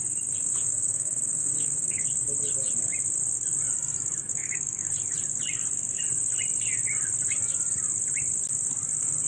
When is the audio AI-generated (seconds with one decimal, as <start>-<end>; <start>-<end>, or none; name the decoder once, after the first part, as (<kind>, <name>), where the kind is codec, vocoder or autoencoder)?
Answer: 0.4-2.0 (autoencoder, DAC-VAE); 4.4-4.9